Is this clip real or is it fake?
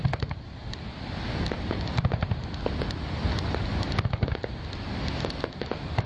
real